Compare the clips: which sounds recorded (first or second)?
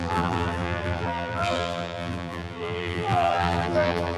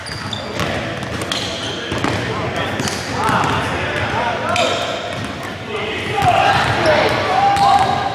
second